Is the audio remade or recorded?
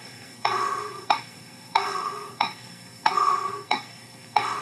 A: remade